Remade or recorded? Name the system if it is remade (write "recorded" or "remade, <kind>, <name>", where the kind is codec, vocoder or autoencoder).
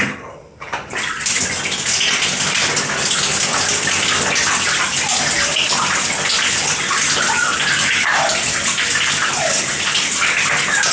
recorded